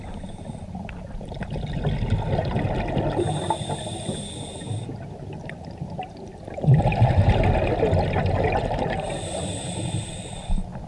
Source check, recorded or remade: recorded